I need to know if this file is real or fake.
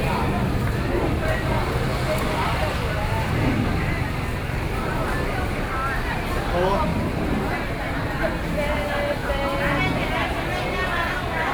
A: real